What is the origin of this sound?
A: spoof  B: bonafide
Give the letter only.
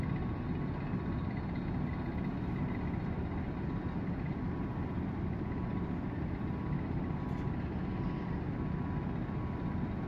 B